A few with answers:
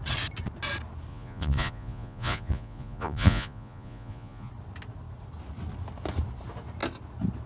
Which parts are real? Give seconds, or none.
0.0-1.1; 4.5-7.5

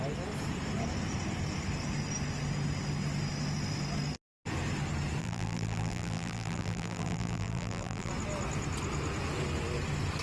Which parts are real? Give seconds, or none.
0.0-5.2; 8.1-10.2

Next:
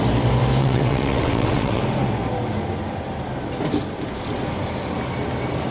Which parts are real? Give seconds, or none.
0.0-0.6; 1.8-5.7

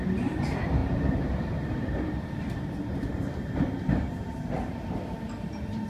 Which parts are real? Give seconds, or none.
none

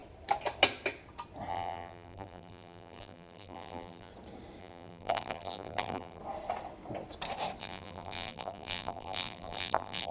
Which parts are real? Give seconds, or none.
0.0-1.5; 4.1-4.6; 6.2-7.6

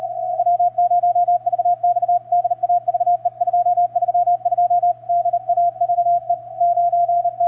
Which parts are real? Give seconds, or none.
0.0-5.9; 6.4-7.5

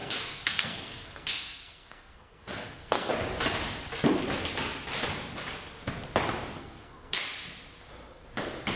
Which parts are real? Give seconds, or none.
3.1-6.6; 7.2-8.8

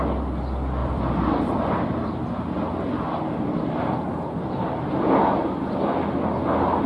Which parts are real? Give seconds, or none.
0.0-0.8; 4.9-6.9